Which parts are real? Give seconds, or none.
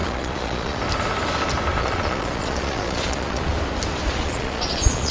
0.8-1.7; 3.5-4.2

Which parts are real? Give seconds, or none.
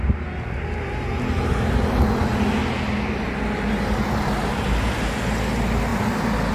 0.0-6.5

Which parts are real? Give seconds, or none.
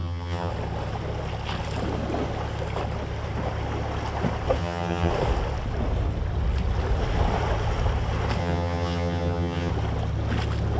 0.5-4.6; 5.1-8.4; 9.7-10.8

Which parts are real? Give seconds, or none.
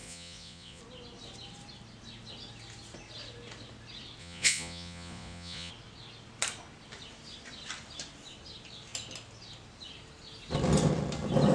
0.8-4.2; 5.7-11.5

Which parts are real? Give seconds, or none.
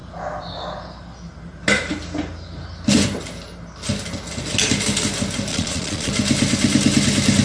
0.0-5.5; 6.1-7.4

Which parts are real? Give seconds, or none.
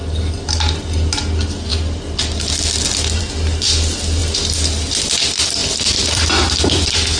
0.0-5.6; 6.3-7.2